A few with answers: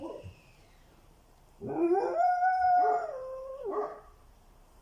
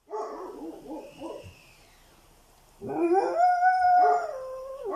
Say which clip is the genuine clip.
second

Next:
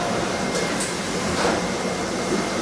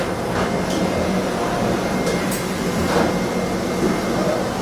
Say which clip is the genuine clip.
second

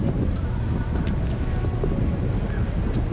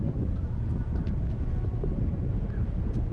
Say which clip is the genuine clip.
first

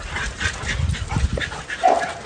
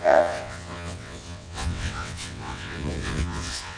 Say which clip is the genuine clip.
first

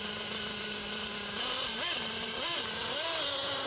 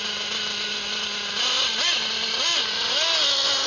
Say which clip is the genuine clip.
second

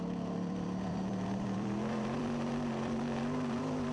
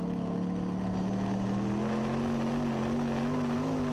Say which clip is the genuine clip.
second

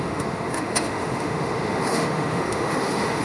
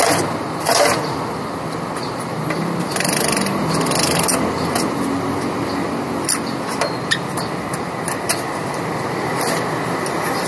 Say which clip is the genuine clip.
second